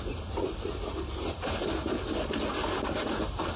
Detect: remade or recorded recorded